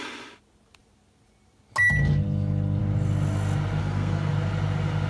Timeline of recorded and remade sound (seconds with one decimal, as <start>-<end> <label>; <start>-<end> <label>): 0.0-3.8 recorded; 3.8-4.3 remade; 4.3-5.1 recorded